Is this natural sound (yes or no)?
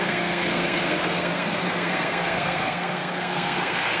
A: no